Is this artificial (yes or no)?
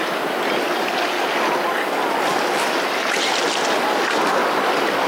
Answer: no